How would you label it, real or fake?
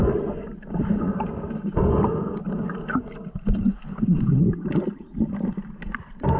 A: real